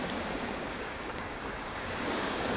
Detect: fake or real fake